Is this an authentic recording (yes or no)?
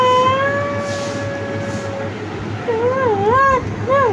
yes